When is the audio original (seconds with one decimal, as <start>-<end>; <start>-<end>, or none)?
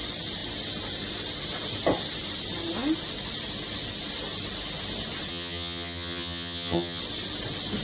0.0-5.3; 7.0-7.8